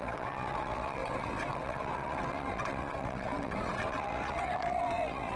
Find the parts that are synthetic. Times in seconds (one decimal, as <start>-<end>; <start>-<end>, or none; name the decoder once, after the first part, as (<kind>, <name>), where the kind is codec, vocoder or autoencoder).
0.0-5.4 (vocoder, WaveNeXt)